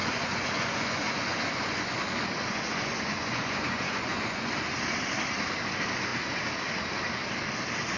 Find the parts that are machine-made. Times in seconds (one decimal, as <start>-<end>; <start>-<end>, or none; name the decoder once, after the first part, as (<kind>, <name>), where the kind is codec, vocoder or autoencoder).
0.0-1.9 (vocoder, Vocos); 2.5-4.5